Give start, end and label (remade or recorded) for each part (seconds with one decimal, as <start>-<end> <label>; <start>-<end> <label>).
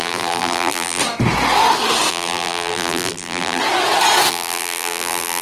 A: 0.0-1.0 remade; 1.0-2.1 recorded; 2.1-3.6 remade; 3.6-4.3 recorded; 4.3-5.4 remade